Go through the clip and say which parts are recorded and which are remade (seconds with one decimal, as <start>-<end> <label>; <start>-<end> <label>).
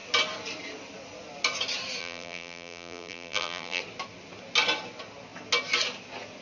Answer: 0.0-2.0 recorded; 2.0-3.8 remade; 3.8-6.4 recorded